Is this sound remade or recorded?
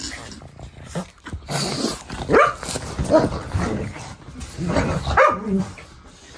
recorded